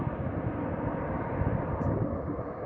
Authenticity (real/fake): real